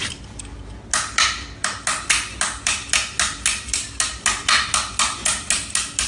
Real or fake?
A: real